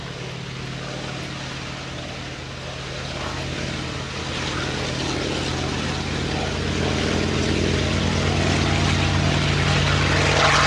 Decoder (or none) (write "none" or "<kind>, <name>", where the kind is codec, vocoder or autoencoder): none